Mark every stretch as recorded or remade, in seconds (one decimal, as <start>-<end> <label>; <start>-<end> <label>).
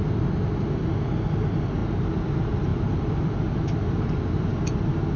0.0-2.7 recorded; 2.7-4.1 remade; 4.1-5.2 recorded